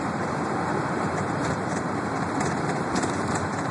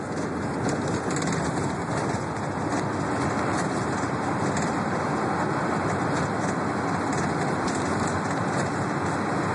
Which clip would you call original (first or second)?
second